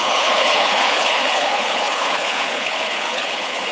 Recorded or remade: remade